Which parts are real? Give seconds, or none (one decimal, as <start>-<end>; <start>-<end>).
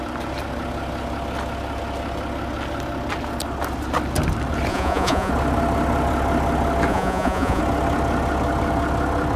0.0-4.7; 5.3-6.9; 7.6-9.4